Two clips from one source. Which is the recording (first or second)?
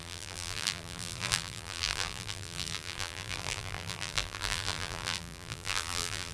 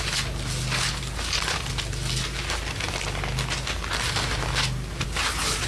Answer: second